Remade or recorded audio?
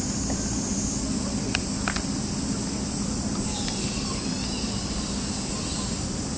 recorded